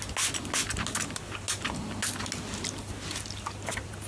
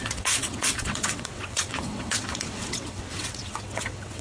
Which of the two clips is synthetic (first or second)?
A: second